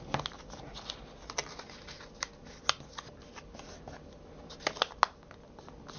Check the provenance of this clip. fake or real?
real